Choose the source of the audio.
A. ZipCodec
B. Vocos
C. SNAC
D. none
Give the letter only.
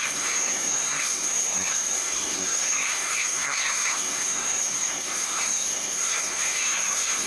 C